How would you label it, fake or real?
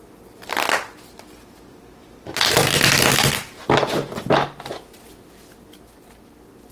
real